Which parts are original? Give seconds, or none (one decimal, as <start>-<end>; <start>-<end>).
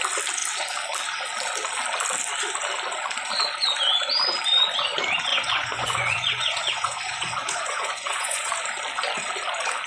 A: 0.0-5.3; 8.5-9.9